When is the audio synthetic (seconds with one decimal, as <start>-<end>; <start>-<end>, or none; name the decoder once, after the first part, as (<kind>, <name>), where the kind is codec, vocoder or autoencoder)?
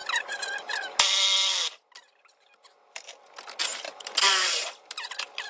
3.6-4.9 (vocoder, BigVGAN v2)